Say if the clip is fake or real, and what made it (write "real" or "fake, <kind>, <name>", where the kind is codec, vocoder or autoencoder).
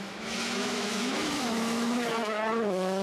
fake, autoencoder, DAC-VAE